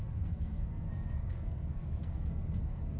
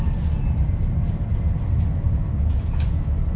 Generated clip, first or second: first